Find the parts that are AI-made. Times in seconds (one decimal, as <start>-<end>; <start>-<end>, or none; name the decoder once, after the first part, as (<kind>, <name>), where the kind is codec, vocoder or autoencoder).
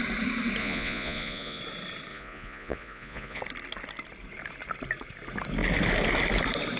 0.6-1.6 (vocoder, Vocos); 2.1-3.4